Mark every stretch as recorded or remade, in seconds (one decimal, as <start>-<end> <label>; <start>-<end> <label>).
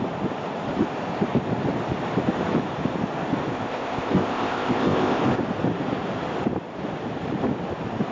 0.0-3.5 recorded; 3.5-5.2 remade; 5.2-8.1 recorded